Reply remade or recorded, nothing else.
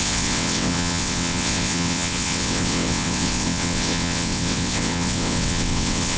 remade